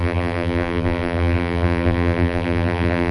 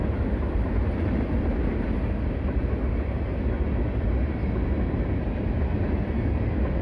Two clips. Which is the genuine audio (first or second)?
second